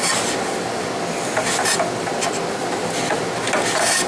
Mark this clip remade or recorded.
recorded